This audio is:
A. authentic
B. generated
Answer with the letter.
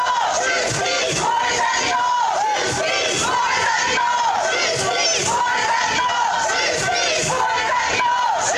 A